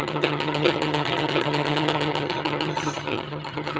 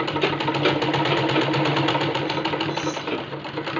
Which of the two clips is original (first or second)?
second